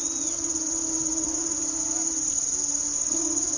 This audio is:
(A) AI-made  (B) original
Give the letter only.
B